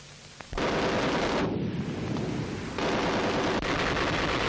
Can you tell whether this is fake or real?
real